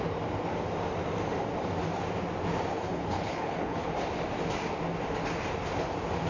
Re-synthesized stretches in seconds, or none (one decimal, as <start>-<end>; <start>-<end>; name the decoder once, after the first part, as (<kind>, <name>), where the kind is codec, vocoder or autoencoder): 2.7-3.9 (codec, HILCodec)